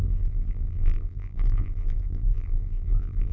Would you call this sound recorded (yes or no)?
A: no